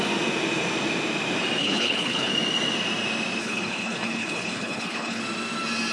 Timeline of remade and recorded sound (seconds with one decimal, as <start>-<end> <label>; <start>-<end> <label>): 0.0-1.6 recorded; 1.6-2.3 remade; 2.3-3.4 recorded; 3.4-5.2 remade; 5.2-5.9 recorded